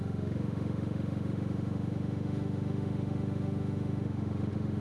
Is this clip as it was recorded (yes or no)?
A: no